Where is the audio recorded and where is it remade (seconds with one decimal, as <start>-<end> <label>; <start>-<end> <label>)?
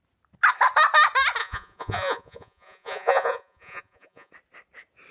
0.0-1.4 recorded; 1.4-4.3 remade; 4.3-5.1 recorded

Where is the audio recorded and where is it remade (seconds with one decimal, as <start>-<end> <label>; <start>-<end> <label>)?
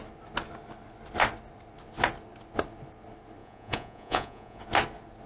0.0-3.4 recorded; 3.4-4.6 remade; 4.6-5.3 recorded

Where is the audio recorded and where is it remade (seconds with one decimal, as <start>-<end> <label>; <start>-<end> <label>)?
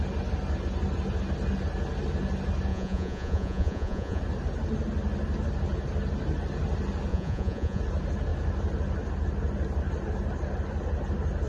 0.0-2.7 recorded; 2.7-4.2 remade; 4.2-7.1 recorded; 7.1-7.8 remade; 7.8-11.5 recorded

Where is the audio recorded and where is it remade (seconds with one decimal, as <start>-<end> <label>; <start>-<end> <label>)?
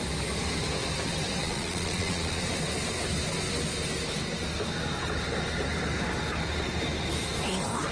0.0-1.4 recorded; 1.4-2.4 remade; 2.4-7.9 recorded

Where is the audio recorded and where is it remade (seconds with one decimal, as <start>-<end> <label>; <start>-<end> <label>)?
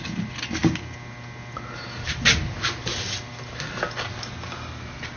0.0-5.2 recorded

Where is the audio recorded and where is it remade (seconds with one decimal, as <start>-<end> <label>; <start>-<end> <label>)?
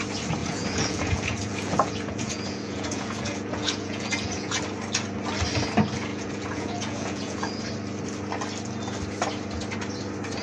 0.0-0.4 recorded; 0.4-4.6 remade; 4.6-6.1 recorded; 6.1-7.6 remade; 7.6-10.4 recorded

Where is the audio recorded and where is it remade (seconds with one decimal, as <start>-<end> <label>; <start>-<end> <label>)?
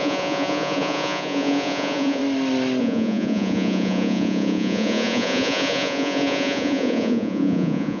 0.0-2.2 remade; 2.2-2.8 recorded; 2.8-8.0 remade